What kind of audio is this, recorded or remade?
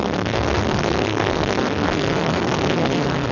remade